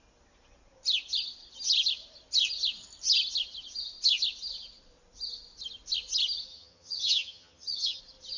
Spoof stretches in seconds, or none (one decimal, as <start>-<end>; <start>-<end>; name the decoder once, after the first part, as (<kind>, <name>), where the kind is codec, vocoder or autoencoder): 6.5-8.0 (vocoder, HiFi-GAN)